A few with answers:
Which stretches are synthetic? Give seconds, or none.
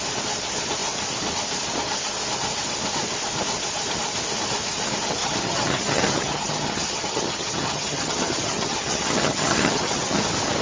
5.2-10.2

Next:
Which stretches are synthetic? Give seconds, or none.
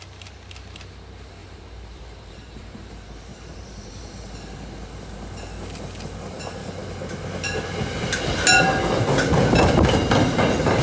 1.4-2.9; 3.3-3.9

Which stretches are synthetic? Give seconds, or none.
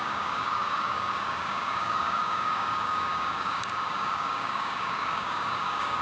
0.0-6.0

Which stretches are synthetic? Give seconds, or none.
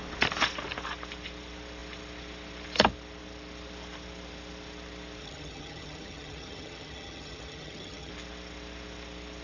5.2-8.1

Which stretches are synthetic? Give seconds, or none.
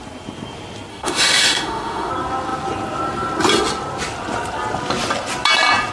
0.9-2.1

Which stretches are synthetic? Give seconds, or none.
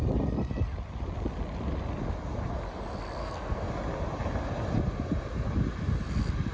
3.2-3.7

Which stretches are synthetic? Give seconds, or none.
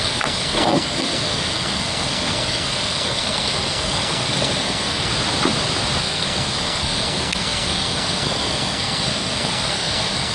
0.0-5.1; 6.0-10.3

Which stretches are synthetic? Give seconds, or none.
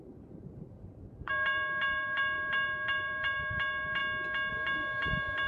0.0-4.0; 4.5-5.5